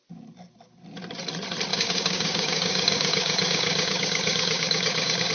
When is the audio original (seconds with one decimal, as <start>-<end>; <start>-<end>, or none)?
0.0-1.7